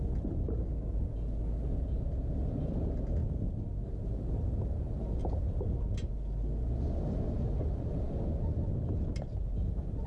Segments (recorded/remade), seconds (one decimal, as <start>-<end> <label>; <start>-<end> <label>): 0.0-3.2 recorded; 3.2-4.0 remade; 4.0-10.1 recorded